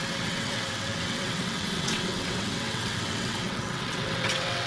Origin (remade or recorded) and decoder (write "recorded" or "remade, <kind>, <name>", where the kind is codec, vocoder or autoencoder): remade, vocoder, WaveNeXt